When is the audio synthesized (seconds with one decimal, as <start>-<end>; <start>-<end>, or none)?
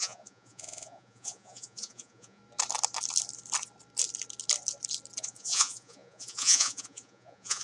0.0-2.4; 5.2-7.6